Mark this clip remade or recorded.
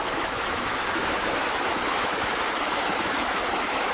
remade